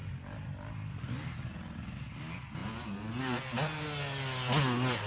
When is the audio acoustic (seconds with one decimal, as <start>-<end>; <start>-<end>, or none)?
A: 0.0-5.1